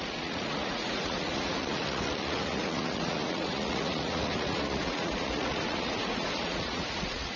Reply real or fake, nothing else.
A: fake